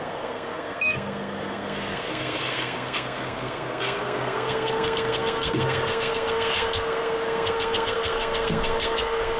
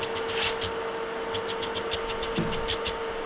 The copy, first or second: first